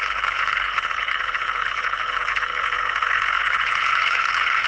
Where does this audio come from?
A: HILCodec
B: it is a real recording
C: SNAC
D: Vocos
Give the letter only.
A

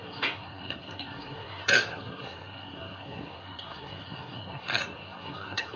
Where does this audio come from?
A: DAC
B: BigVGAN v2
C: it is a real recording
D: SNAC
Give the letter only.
D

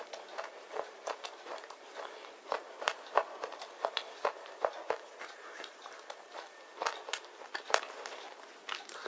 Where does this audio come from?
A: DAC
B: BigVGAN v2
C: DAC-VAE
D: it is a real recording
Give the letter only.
B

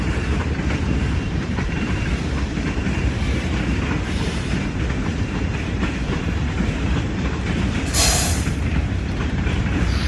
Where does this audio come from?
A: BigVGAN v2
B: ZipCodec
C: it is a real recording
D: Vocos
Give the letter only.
A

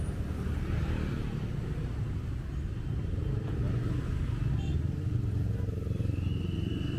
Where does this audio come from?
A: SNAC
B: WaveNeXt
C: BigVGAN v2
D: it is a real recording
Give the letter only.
D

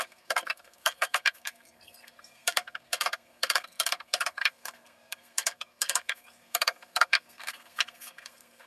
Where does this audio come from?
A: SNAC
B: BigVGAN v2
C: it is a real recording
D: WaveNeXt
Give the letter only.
A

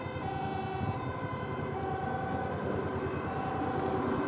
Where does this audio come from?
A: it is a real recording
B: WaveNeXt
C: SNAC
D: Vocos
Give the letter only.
A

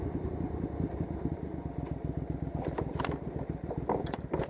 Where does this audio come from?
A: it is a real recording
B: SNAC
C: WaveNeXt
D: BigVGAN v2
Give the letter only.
A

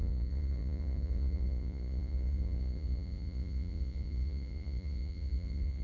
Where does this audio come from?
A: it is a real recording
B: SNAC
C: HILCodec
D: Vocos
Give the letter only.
D